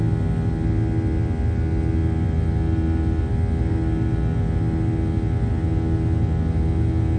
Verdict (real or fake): real